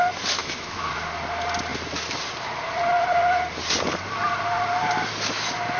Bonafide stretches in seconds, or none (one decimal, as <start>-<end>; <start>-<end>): 0.0-0.4; 1.0-5.8